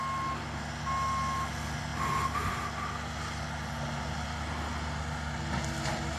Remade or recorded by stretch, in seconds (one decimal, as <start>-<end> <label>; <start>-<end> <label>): 0.0-6.2 recorded